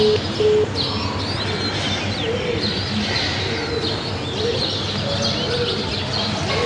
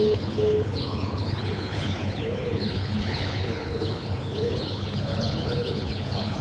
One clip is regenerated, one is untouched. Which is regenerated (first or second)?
second